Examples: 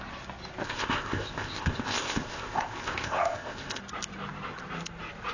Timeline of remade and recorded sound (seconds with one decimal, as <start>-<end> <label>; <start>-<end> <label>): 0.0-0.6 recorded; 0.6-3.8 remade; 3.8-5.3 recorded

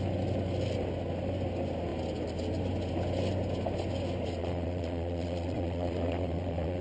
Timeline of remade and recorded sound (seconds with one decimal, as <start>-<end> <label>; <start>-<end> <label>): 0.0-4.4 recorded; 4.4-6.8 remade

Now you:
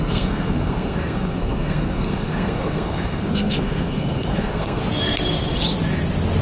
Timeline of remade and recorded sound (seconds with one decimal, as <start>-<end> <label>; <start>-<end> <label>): 0.0-4.8 remade; 4.8-6.4 recorded